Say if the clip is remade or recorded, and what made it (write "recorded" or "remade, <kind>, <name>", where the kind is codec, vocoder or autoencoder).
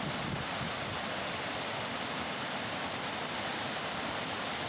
recorded